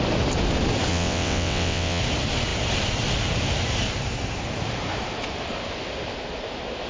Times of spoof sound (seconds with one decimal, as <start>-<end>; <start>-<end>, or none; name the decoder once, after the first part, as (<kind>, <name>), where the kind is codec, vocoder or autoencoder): 0.9-2.0 (vocoder, WaveNeXt)